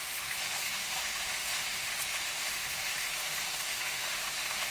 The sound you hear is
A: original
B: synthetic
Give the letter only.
B